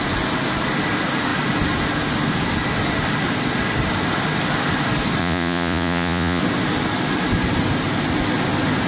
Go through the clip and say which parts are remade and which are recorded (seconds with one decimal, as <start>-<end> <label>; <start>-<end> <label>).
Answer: 0.0-5.2 recorded; 5.2-6.4 remade; 6.4-8.9 recorded